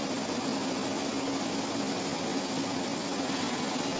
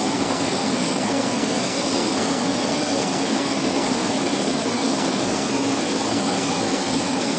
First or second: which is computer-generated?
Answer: second